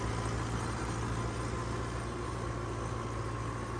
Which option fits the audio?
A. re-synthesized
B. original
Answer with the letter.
B